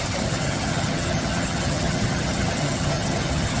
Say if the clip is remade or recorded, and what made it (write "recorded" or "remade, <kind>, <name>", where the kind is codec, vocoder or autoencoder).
remade, vocoder, HiFi-GAN